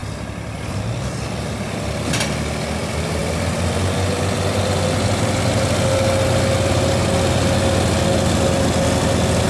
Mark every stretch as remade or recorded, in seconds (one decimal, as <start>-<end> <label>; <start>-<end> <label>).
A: 0.0-9.5 recorded